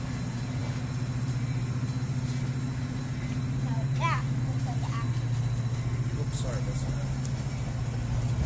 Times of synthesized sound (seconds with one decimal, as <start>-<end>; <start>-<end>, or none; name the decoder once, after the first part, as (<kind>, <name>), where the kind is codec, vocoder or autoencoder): none